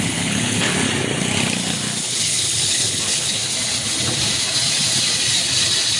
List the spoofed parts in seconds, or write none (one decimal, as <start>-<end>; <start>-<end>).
0.0-0.8; 2.0-3.4